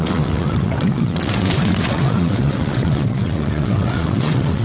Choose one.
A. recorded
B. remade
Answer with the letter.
B